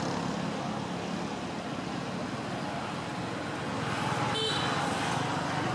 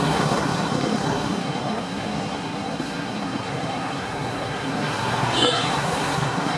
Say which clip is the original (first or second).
first